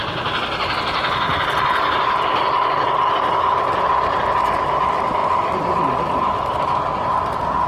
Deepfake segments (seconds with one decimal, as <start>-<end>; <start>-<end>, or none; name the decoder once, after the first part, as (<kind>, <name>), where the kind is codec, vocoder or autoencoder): none